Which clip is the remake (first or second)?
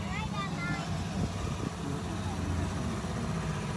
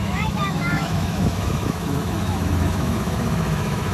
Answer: second